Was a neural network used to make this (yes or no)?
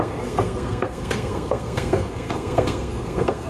yes